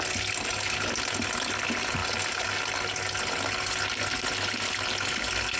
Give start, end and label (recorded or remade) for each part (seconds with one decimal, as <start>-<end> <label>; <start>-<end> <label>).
0.0-5.6 recorded